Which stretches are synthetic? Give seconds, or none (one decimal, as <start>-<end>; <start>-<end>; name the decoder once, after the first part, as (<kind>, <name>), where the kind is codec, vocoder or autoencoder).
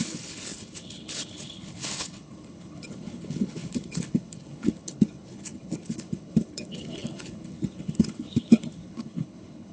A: 0.0-9.7 (codec, HILCodec)